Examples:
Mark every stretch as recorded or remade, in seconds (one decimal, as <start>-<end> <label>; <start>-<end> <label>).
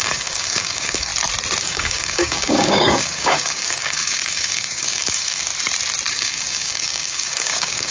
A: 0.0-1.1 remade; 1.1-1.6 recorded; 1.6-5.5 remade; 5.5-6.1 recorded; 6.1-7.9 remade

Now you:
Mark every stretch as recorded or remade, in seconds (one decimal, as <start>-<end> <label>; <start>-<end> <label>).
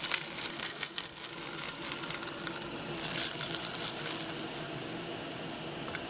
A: 0.0-0.5 recorded; 0.5-1.3 remade; 1.3-6.1 recorded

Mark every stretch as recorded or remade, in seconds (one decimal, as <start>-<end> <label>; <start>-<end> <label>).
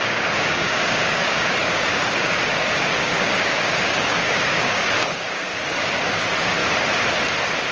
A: 0.0-6.6 remade; 6.6-7.7 recorded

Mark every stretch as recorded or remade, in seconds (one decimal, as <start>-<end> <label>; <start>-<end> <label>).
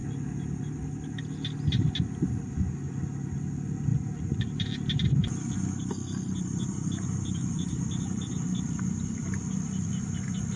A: 0.0-10.6 recorded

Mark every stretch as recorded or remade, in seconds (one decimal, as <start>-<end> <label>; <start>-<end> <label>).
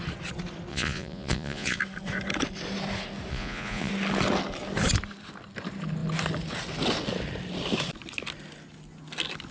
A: 0.0-0.7 recorded; 0.7-1.8 remade; 1.8-3.3 recorded; 3.3-3.9 remade; 3.9-9.5 recorded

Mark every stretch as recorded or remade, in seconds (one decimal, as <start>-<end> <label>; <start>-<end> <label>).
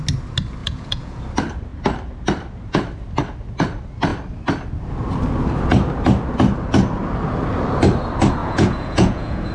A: 0.0-0.6 recorded; 0.6-1.2 remade; 1.2-8.4 recorded; 8.4-9.5 remade